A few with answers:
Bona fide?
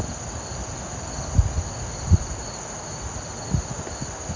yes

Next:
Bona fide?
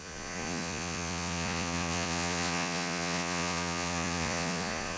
no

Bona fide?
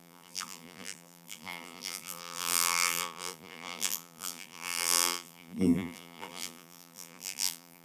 no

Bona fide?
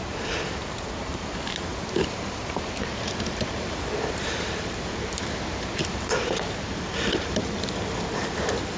no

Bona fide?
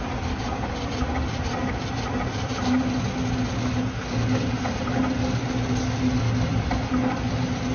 yes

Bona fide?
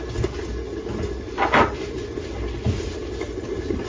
yes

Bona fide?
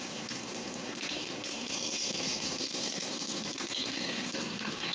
no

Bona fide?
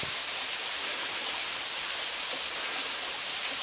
yes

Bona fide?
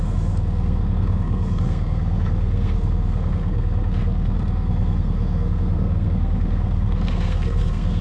no